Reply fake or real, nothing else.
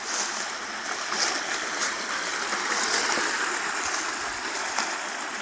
real